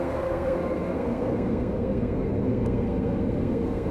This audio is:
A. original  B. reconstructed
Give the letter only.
B